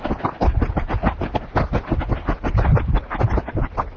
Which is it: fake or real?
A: real